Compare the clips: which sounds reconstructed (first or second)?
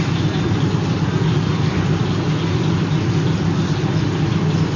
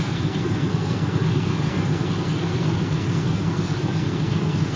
second